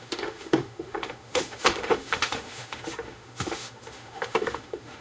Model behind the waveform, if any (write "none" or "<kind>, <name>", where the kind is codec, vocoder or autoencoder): autoencoder, DAC-VAE